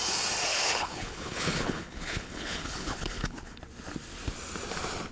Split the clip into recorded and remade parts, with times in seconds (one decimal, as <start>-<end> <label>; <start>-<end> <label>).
0.0-0.5 recorded; 0.5-3.6 remade; 3.6-5.1 recorded